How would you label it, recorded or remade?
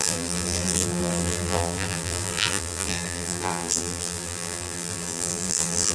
remade